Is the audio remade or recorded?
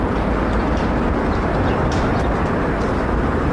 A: remade